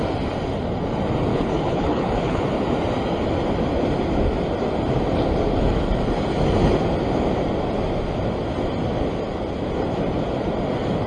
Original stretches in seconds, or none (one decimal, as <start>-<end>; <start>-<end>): 0.0-1.3; 2.4-11.1